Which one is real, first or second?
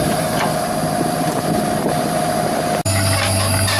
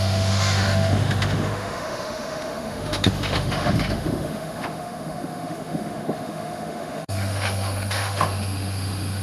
first